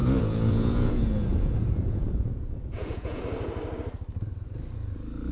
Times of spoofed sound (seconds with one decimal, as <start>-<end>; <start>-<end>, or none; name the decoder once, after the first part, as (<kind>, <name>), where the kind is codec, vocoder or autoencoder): 0.0-3.2 (vocoder, Vocos)